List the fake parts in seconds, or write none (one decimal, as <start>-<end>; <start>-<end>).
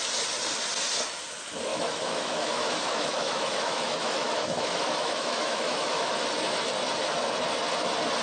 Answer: 1.7-6.1